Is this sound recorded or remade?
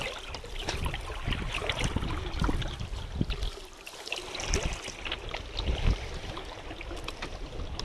recorded